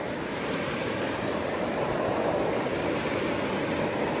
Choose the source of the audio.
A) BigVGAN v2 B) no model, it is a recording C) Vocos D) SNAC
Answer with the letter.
B